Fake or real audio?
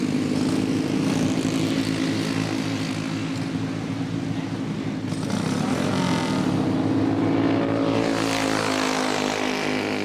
real